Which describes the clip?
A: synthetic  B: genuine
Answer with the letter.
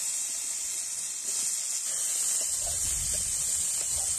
B